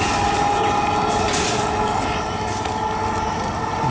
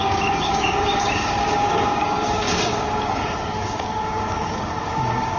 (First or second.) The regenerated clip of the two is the second